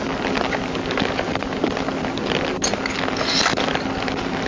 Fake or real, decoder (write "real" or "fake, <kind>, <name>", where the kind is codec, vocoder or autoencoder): real